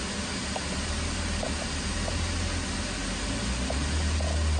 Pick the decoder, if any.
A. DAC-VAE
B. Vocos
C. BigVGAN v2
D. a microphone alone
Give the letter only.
D